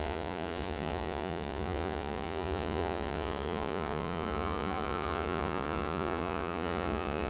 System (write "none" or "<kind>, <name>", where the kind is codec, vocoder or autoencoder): vocoder, Vocos